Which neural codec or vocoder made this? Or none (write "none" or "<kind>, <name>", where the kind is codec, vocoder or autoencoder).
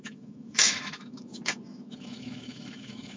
autoencoder, DAC-VAE